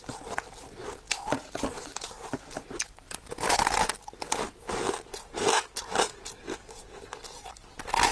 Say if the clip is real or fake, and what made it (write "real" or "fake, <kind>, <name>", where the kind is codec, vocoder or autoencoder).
real